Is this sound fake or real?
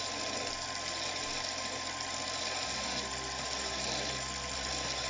real